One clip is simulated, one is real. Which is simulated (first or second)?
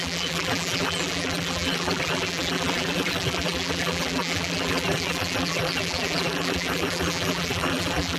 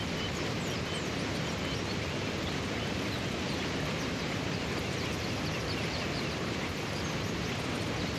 first